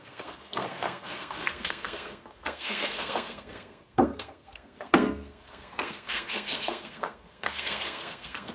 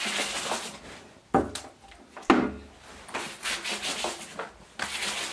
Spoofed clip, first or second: first